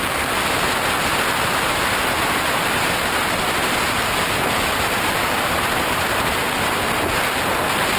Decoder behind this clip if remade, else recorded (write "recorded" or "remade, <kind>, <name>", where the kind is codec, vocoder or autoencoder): recorded